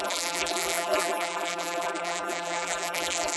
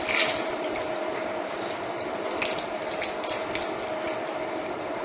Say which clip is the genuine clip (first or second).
second